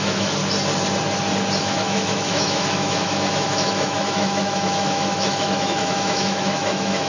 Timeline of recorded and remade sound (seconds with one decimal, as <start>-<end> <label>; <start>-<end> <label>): 0.0-0.4 remade; 0.4-1.6 recorded; 1.6-7.1 remade

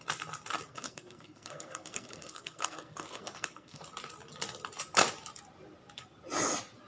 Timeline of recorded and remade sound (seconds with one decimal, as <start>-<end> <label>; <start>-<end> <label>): 0.0-0.7 recorded; 0.7-3.8 remade; 3.8-6.9 recorded

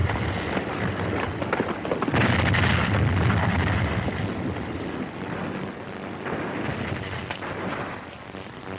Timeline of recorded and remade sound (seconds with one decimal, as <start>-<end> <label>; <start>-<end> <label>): 0.0-8.8 recorded

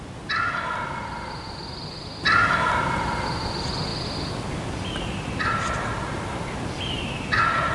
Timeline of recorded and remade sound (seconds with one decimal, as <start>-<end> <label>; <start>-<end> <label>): 0.0-7.7 recorded

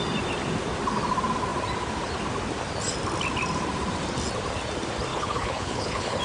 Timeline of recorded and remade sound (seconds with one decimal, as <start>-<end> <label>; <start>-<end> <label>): 0.0-5.1 recorded; 5.1-6.2 remade

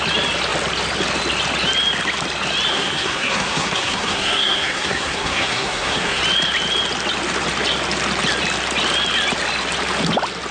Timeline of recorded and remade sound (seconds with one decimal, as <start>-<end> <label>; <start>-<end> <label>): 0.0-2.7 recorded; 2.7-6.2 remade; 6.2-10.5 recorded

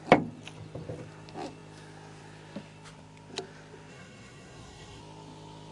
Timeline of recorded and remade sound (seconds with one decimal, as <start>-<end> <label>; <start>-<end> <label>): 0.0-3.9 recorded; 3.9-5.0 remade; 5.0-5.7 recorded

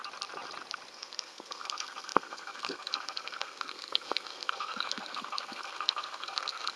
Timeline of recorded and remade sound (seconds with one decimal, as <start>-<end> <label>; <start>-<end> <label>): 0.0-0.9 recorded; 0.9-6.8 remade